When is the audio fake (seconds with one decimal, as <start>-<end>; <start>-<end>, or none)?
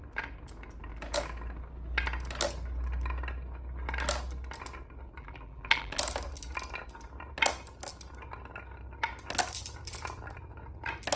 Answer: 5.2-6.0